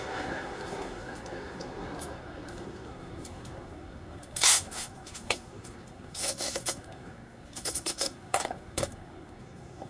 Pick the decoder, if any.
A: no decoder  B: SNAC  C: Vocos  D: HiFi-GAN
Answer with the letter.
B